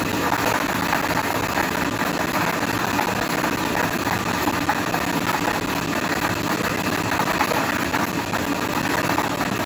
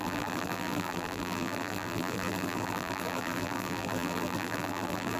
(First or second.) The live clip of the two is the first